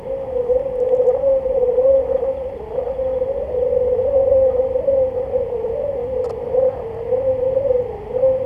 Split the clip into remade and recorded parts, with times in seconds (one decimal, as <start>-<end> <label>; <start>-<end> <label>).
0.0-8.5 recorded